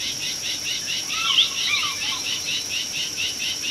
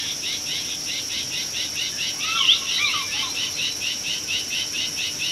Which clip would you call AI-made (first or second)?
first